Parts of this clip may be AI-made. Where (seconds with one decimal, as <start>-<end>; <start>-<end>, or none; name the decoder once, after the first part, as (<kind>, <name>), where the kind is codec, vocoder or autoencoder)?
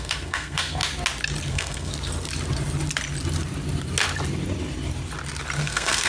0.0-0.8 (codec, SNAC); 1.5-1.9; 5.6-6.1